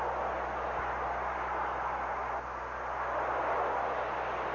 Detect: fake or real real